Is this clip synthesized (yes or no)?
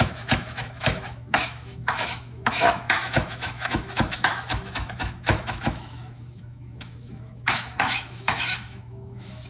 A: yes